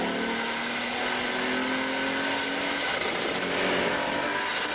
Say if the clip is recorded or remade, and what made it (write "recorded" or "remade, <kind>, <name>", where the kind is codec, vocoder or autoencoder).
recorded